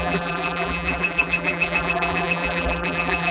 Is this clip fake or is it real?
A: fake